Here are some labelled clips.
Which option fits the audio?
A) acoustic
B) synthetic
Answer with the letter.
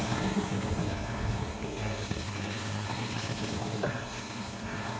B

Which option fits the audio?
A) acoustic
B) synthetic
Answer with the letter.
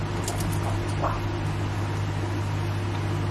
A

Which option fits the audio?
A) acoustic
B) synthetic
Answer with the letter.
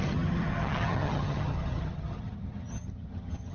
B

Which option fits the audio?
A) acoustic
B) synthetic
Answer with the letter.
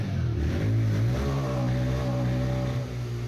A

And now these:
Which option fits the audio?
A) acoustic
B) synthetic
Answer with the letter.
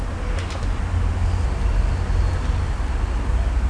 A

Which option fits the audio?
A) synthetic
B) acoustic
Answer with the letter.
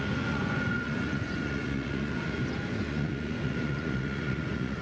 A